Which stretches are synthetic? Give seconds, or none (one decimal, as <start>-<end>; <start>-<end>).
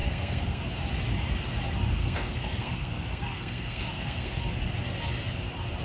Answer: 0.0-0.6; 2.0-4.4